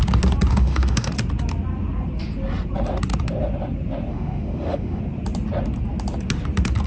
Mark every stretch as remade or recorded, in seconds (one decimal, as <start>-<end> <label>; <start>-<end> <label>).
0.0-0.5 recorded; 0.5-1.1 remade; 1.1-4.1 recorded; 4.1-5.0 remade; 5.0-6.9 recorded